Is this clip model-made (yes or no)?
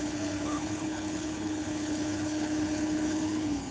yes